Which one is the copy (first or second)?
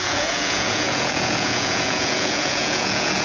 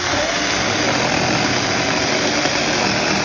first